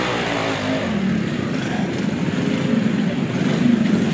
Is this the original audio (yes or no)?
yes